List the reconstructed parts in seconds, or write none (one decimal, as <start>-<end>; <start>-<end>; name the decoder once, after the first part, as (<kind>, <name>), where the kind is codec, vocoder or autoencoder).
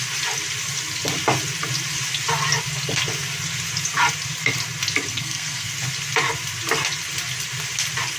5.1-5.7 (codec, SNAC)